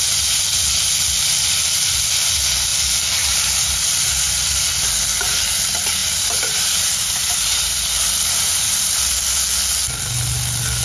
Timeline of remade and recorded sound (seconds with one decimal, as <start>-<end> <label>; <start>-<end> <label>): 0.0-6.0 recorded; 6.0-9.1 remade; 9.1-10.8 recorded